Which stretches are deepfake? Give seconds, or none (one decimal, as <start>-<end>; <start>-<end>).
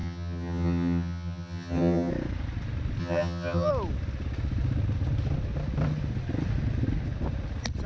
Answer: 0.0-2.1; 3.0-3.7